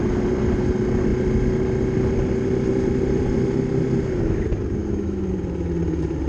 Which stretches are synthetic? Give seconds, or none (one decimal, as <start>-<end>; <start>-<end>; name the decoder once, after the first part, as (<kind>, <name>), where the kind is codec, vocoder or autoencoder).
4.8-5.3 (autoencoder, DAC-VAE)